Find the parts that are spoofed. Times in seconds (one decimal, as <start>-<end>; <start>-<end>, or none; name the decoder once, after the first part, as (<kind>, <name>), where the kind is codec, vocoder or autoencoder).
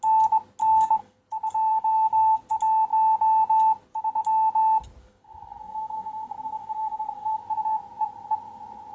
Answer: 0.6-1.2 (codec, SNAC); 1.7-2.4; 5.0-7.4